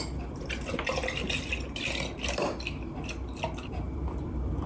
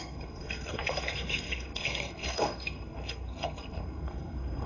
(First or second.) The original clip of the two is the first